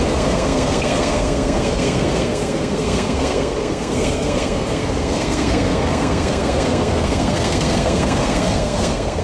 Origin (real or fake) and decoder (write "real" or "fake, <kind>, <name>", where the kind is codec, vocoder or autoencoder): fake, codec, SNAC